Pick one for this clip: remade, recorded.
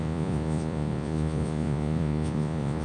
remade